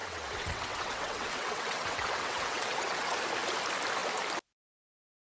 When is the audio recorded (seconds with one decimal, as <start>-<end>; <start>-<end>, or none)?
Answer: 3.2-5.4